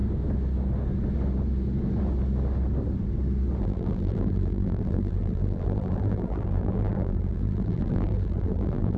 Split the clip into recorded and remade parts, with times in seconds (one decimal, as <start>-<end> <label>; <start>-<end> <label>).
0.0-3.6 recorded; 3.6-9.0 remade